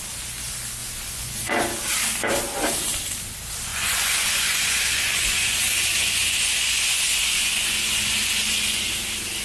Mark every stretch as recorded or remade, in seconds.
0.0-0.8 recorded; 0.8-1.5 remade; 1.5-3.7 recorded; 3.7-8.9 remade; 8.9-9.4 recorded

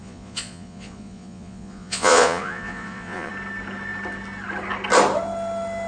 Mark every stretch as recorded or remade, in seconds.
0.0-3.3 remade; 3.3-5.9 recorded

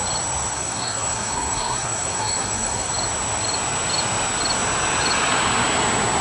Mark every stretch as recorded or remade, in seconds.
0.0-0.5 recorded; 0.5-2.9 remade; 2.9-6.2 recorded